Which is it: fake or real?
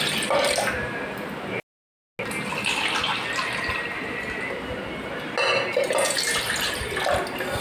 real